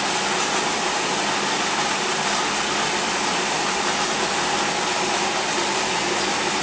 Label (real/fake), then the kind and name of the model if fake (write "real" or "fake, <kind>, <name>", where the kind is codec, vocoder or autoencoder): real